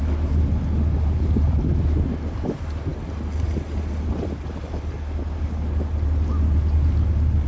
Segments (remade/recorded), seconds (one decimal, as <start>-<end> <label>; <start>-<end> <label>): 0.0-7.5 recorded